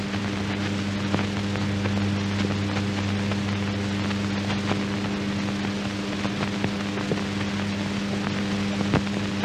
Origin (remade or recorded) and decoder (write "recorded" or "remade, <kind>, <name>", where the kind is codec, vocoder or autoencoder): recorded